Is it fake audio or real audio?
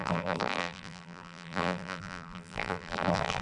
fake